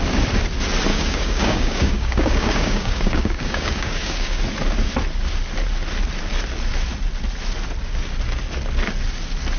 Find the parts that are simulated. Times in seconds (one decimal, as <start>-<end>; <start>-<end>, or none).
0.9-4.4